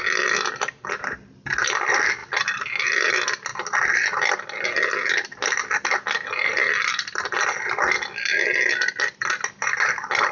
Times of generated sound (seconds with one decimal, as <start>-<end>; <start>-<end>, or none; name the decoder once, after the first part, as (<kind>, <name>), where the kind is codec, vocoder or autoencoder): none

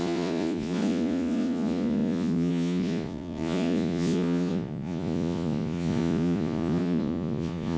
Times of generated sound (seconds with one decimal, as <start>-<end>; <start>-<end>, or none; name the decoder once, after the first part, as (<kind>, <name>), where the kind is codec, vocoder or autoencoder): 0.0-7.8 (vocoder, Vocos)